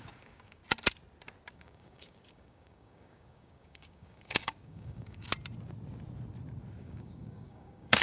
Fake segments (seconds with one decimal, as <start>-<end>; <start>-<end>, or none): 0.0-0.6; 1.5-5.3; 6.8-8.0